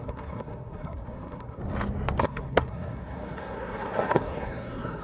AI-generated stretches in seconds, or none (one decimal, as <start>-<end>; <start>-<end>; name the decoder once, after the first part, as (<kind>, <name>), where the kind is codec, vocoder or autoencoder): 0.0-1.6 (codec, SNAC); 2.2-5.0